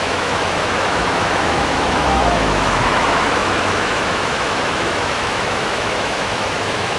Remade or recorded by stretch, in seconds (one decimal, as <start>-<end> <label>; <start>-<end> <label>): 0.0-7.0 remade